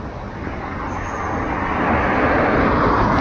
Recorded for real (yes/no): yes